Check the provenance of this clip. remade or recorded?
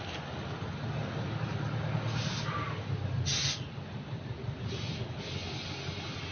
recorded